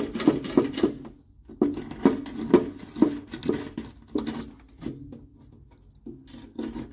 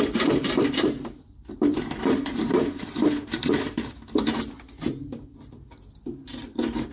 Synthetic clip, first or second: second